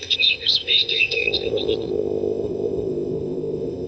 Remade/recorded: remade